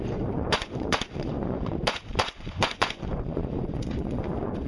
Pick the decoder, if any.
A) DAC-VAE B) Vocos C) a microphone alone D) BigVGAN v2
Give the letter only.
B